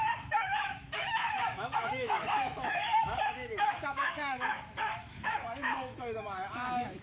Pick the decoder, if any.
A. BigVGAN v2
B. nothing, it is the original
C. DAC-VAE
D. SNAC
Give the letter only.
C